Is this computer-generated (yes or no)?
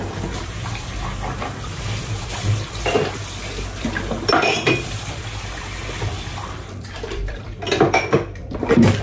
yes